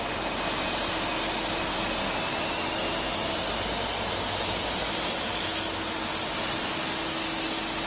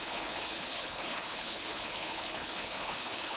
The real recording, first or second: first